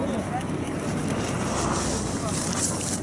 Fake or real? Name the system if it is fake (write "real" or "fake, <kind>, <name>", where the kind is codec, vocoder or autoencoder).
real